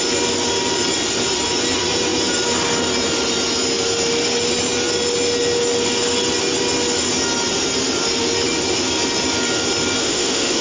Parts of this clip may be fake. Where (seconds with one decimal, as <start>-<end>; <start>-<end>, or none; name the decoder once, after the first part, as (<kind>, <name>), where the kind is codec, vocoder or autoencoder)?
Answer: 10.0-10.6 (autoencoder, DAC-VAE)